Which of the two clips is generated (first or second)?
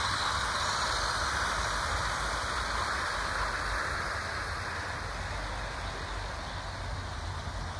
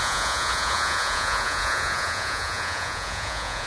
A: second